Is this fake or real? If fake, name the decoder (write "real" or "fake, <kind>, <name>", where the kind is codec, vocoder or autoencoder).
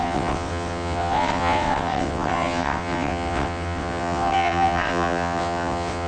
fake, vocoder, WaveNeXt